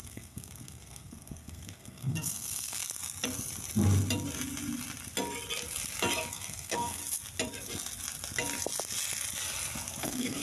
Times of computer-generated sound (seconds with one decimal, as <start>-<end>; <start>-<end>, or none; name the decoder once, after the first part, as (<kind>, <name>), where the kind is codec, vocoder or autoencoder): 0.0-2.8 (codec, SNAC); 6.3-7.0; 10.0-10.4